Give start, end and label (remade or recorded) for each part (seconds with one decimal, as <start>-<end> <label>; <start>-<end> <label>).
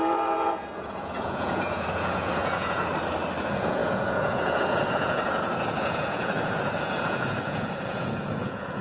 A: 0.0-2.9 remade; 2.9-3.4 recorded; 3.4-8.8 remade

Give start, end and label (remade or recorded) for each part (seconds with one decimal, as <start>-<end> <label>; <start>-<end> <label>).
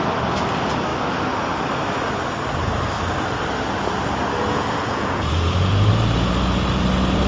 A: 0.0-4.4 recorded; 4.4-5.9 remade; 5.9-7.3 recorded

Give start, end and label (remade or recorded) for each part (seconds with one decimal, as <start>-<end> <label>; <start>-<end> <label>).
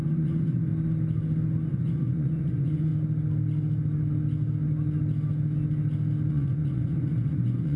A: 0.0-0.7 remade; 0.7-1.7 recorded; 1.7-2.9 remade; 2.9-6.3 recorded; 6.3-7.8 remade